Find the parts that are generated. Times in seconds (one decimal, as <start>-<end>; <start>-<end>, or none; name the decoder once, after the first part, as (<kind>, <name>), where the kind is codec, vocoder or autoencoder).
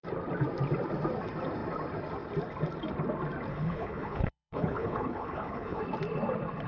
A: 3.5-5.8 (codec, HILCodec)